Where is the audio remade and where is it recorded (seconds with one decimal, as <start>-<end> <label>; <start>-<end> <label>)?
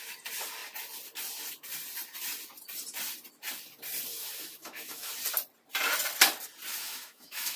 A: 0.0-4.1 recorded; 4.1-5.1 remade; 5.1-6.8 recorded; 6.8-7.6 remade